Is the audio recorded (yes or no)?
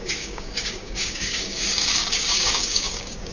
no